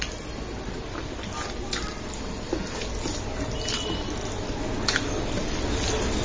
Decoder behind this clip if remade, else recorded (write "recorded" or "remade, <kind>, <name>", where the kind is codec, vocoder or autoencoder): recorded